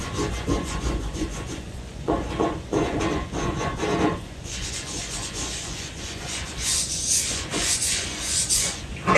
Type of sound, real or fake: fake